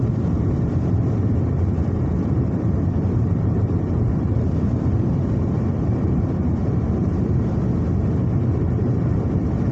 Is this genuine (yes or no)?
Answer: no